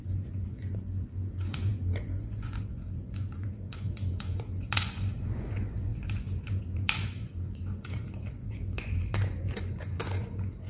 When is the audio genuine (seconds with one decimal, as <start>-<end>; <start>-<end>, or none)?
none